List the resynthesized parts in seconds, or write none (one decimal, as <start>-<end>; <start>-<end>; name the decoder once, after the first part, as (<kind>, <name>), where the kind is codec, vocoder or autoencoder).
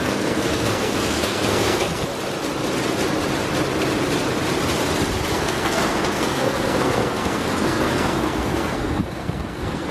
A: 0.0-2.1 (codec, SNAC); 5.3-9.9